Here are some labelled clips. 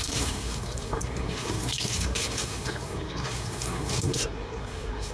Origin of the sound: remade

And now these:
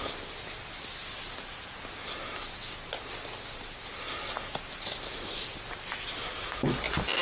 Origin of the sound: recorded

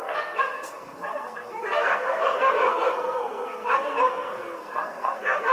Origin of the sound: remade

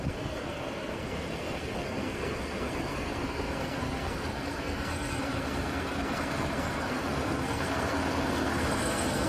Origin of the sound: remade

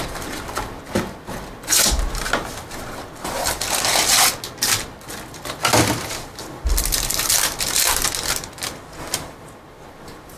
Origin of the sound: recorded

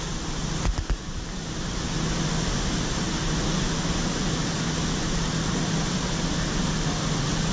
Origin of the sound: recorded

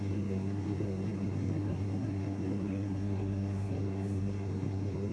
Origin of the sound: remade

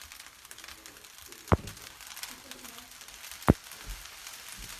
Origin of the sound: recorded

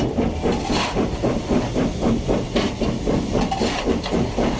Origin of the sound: recorded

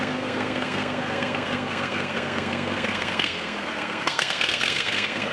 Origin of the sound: remade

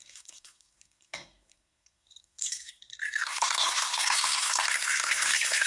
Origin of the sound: remade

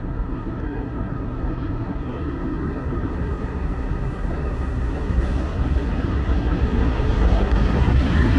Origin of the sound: remade